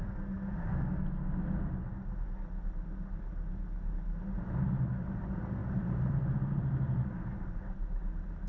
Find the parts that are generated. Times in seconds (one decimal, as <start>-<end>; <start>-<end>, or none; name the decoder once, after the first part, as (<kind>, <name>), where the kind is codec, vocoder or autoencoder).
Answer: 5.6-7.1 (vocoder, BigVGAN v2)